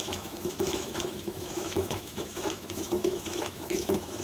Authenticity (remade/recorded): remade